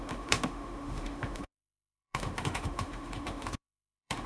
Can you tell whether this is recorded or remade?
remade